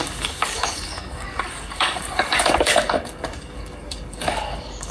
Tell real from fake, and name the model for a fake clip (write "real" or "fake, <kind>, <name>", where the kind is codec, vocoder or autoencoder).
fake, codec, DAC